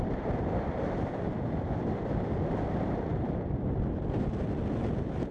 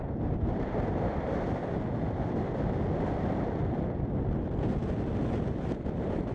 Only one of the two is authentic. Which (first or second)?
second